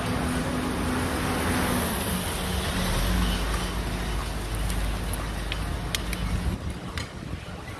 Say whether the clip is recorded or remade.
recorded